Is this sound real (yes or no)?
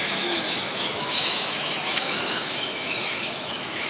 no